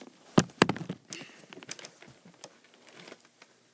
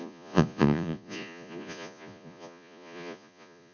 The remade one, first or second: second